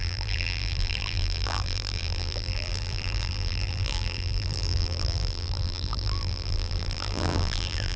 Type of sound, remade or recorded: remade